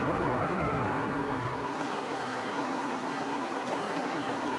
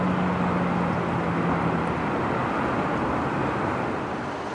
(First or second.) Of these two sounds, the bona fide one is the second